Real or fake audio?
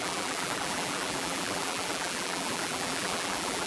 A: fake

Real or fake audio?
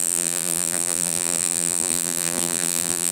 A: fake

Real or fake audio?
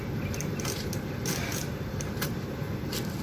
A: fake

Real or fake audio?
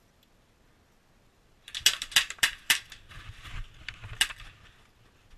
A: real